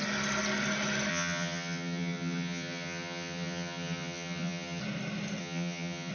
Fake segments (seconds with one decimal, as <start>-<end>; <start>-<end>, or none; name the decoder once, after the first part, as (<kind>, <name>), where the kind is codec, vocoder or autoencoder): 1.1-4.8 (vocoder, HiFi-GAN); 5.4-6.1